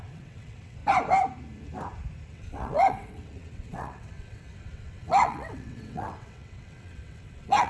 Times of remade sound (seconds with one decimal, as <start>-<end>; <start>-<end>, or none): 0.0-0.8; 2.3-7.7